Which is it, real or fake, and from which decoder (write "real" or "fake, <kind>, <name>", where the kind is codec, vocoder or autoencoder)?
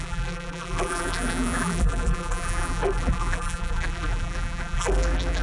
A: fake, vocoder, BigVGAN v2